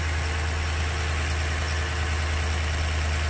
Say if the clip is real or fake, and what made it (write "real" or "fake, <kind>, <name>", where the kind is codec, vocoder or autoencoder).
real